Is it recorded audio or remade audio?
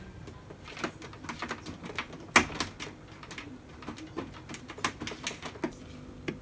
recorded